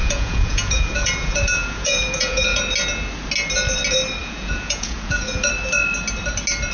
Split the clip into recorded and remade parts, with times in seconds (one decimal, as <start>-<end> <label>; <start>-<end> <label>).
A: 0.0-2.6 remade; 2.6-4.2 recorded; 4.2-5.5 remade; 5.5-6.7 recorded